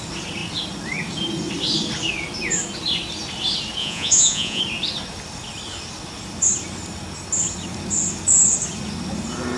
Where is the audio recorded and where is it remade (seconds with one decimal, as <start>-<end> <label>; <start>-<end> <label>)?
0.0-3.8 recorded; 3.8-4.6 remade; 4.6-9.6 recorded